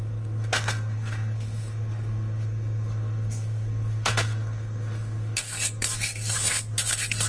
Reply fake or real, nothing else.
fake